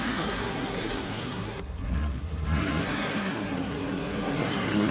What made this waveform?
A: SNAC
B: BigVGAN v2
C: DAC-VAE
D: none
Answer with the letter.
A